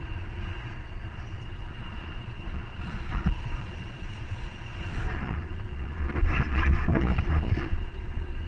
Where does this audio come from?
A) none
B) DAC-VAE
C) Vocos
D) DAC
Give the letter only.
C